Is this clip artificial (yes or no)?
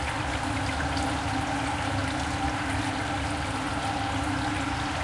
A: no